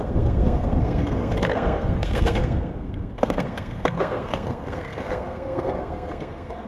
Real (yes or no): no